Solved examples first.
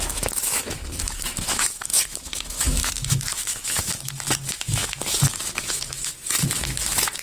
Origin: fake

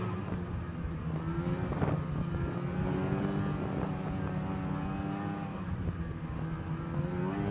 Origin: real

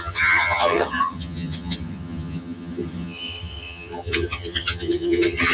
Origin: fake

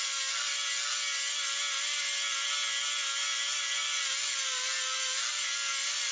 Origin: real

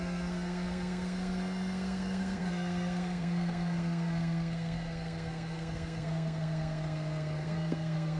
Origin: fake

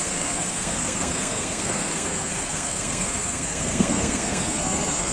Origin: fake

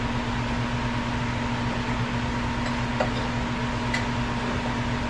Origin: real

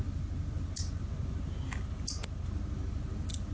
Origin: real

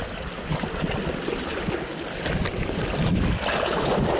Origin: real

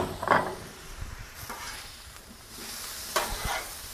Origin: fake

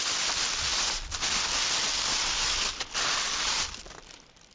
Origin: real